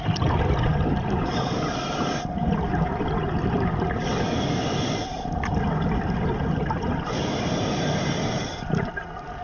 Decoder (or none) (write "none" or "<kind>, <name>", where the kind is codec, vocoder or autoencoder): none